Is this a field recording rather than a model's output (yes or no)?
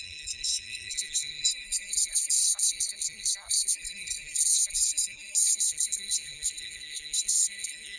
no